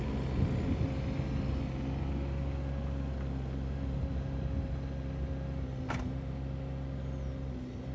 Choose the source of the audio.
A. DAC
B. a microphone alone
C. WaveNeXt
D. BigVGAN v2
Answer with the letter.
B